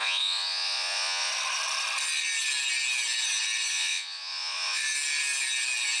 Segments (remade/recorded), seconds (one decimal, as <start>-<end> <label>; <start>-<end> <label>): 0.0-1.3 remade; 1.3-3.7 recorded; 3.7-4.8 remade; 4.8-6.0 recorded